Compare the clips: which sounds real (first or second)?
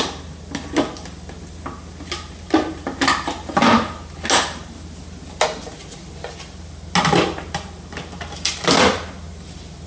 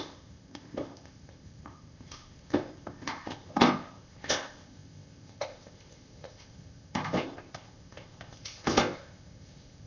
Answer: first